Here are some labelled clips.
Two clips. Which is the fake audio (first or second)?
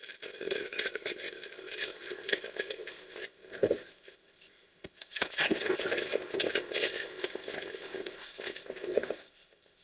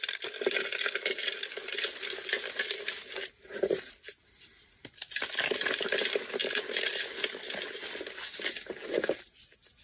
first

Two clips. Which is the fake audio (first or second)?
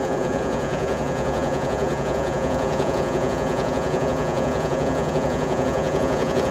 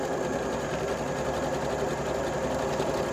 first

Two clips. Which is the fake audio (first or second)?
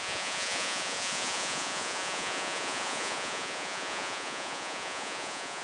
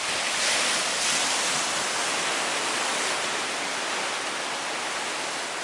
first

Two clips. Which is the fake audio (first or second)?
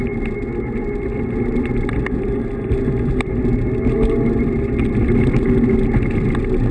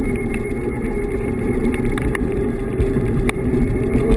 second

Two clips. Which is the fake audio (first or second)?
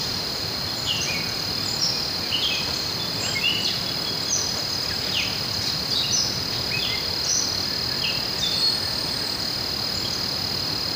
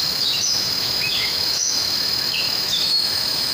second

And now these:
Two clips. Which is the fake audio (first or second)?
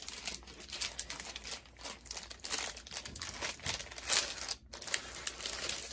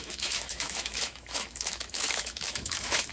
second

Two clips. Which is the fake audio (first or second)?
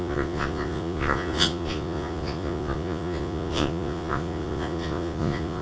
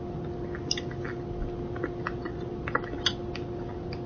first